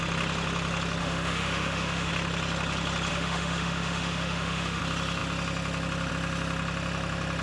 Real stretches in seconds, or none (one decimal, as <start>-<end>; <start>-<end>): 0.0-1.0; 2.1-3.1; 4.8-7.4